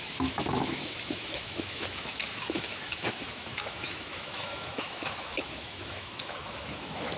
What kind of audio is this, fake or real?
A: fake